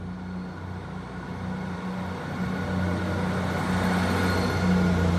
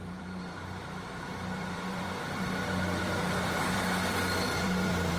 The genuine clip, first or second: first